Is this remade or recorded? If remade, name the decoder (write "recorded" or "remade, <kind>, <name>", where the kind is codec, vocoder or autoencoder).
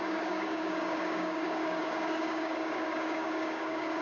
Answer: remade, codec, DAC